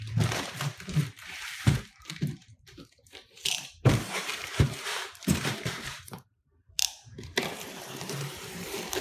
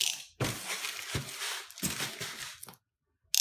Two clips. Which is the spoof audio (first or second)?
first